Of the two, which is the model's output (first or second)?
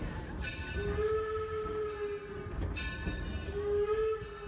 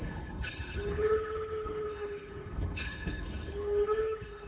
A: second